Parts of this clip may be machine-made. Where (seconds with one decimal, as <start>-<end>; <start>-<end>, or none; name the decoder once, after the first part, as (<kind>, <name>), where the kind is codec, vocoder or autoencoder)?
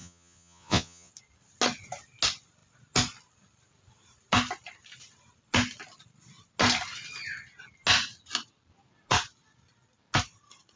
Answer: 0.0-1.1 (vocoder, Vocos)